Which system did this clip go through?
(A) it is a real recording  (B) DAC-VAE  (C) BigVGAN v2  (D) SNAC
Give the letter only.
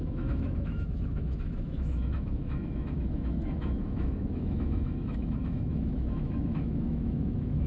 B